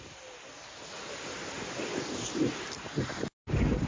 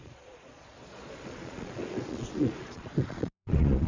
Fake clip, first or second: second